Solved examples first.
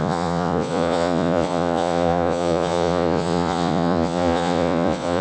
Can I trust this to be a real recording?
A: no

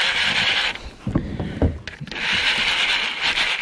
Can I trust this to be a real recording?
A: yes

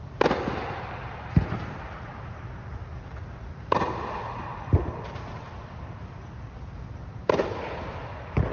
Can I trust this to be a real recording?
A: yes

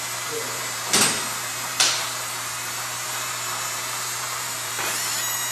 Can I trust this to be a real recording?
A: no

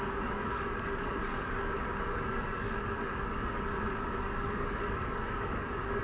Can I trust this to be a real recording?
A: no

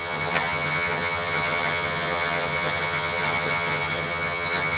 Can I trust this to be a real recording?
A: no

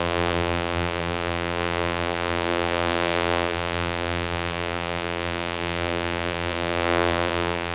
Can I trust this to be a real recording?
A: no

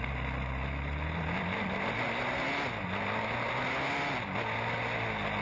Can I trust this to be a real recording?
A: yes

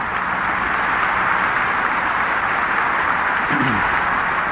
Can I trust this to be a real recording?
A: yes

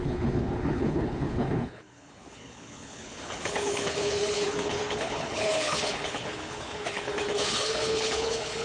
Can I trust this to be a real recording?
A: no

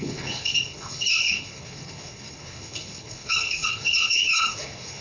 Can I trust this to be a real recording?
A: no